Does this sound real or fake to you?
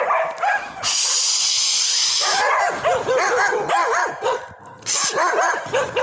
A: real